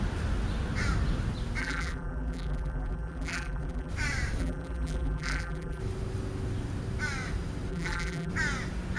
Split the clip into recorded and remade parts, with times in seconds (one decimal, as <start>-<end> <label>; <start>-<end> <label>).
0.0-1.6 recorded; 1.6-3.9 remade; 3.9-4.4 recorded; 4.4-5.8 remade; 5.8-7.7 recorded; 7.7-8.3 remade; 8.3-9.0 recorded